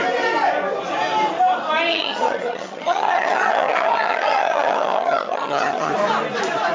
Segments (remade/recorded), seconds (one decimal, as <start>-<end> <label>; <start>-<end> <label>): 0.0-1.9 recorded; 1.9-5.9 remade; 5.9-6.7 recorded